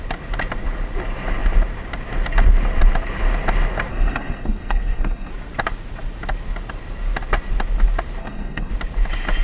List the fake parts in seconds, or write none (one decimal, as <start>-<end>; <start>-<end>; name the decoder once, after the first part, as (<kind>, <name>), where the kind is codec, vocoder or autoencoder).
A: 3.9-5.3 (codec, SNAC); 8.2-8.7